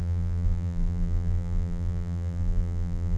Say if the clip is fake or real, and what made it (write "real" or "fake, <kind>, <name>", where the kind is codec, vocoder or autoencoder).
fake, vocoder, BigVGAN v2